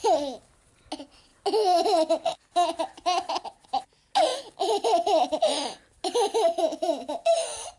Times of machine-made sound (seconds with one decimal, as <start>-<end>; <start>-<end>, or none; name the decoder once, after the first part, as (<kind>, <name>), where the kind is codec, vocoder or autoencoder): none

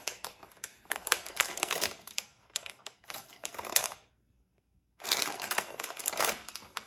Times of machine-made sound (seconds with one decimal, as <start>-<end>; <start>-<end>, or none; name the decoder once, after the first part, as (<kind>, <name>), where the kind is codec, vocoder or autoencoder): 0.0-6.9 (codec, SNAC)

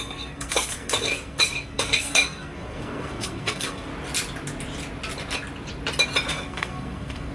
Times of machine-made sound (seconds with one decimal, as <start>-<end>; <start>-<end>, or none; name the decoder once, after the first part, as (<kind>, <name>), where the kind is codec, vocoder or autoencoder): 0.0-3.9 (codec, SNAC); 6.3-7.3

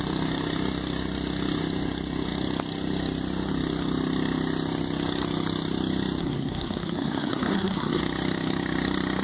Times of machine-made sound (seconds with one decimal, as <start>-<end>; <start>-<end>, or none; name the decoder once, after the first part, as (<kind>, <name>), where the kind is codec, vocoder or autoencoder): 6.2-8.0 (codec, SNAC)

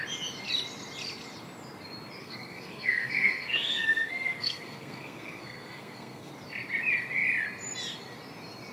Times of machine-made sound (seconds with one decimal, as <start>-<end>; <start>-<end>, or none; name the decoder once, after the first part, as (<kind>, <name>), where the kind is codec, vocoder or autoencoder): 2.2-6.3 (codec, SNAC)